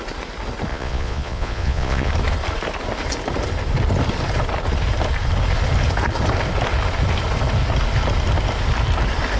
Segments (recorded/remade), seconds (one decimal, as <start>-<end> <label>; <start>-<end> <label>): 0.0-0.7 recorded; 0.7-2.1 remade; 2.1-9.4 recorded